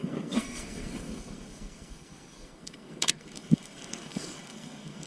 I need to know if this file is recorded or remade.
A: remade